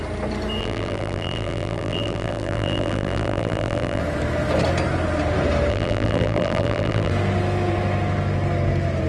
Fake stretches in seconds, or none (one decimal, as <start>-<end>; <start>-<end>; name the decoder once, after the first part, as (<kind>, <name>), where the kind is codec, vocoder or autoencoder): 0.6-4.0 (vocoder, BigVGAN v2); 5.7-7.1